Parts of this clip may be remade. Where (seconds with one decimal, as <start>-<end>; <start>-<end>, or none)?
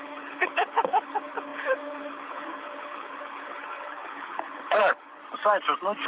0.0-5.2